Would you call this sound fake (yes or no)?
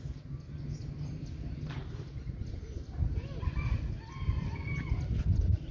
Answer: no